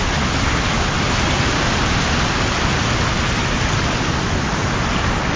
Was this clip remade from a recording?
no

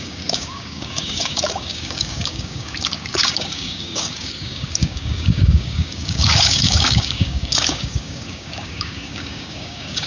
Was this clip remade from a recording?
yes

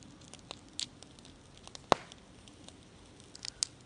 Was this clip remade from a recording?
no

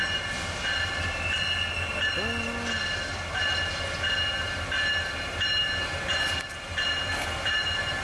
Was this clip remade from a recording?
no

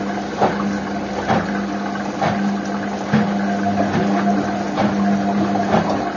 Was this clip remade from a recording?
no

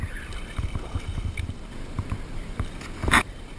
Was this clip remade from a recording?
yes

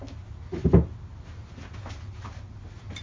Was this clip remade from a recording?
no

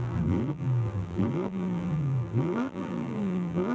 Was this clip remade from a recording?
yes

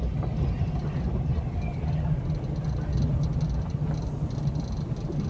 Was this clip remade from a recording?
no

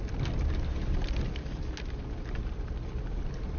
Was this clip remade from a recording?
no